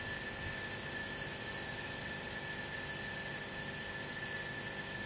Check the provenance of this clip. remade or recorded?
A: recorded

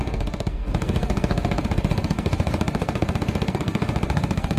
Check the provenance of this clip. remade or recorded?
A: remade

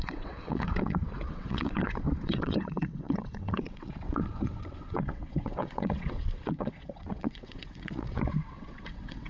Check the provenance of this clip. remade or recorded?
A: remade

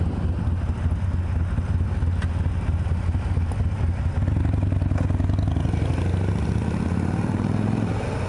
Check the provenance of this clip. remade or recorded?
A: recorded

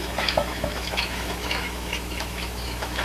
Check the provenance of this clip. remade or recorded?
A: remade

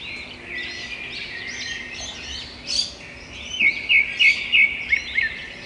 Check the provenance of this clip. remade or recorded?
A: recorded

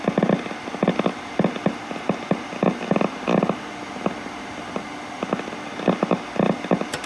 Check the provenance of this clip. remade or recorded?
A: recorded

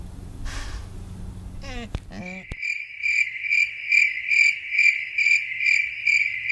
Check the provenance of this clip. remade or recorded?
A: recorded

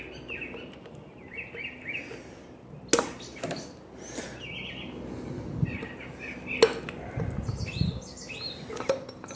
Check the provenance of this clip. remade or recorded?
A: recorded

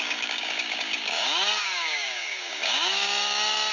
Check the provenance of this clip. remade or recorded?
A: remade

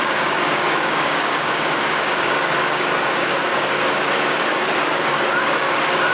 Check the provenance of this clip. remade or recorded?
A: remade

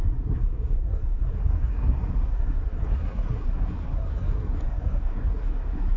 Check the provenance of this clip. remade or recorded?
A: remade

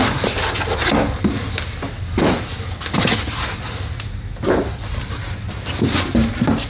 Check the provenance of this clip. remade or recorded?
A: recorded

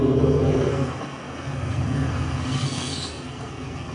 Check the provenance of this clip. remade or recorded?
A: remade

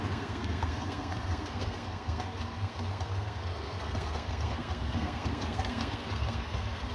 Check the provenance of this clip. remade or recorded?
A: remade